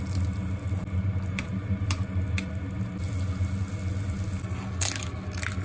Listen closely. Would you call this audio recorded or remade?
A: recorded